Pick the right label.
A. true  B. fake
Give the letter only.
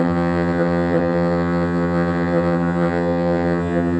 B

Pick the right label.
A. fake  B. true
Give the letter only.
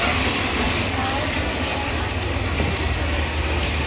B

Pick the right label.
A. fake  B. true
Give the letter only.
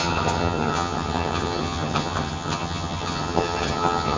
A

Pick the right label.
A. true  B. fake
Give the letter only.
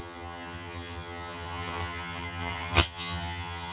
B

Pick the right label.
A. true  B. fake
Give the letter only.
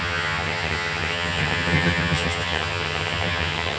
B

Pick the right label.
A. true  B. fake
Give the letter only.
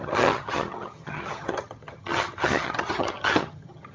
B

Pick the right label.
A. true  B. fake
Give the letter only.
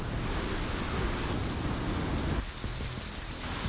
A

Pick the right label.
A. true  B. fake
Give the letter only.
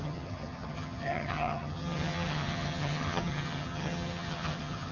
B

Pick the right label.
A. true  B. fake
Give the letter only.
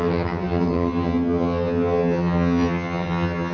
B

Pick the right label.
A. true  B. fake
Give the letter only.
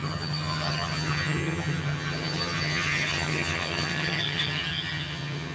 B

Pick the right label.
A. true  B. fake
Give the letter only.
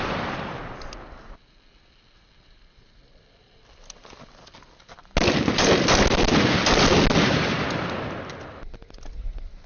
A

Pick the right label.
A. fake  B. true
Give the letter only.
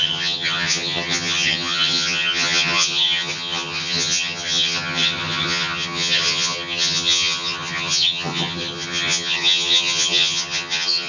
A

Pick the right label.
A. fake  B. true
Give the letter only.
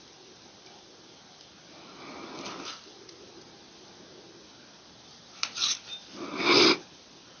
B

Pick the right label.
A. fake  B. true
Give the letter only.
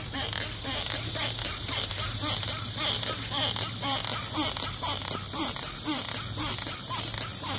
B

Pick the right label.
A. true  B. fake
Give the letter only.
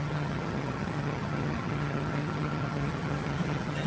B